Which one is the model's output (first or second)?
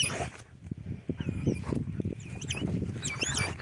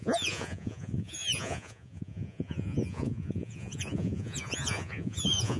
second